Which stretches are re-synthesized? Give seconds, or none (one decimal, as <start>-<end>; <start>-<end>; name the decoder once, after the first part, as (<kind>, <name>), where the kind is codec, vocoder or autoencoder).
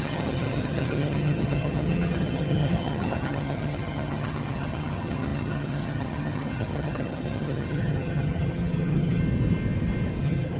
0.0-9.2 (vocoder, HiFi-GAN); 10.2-10.6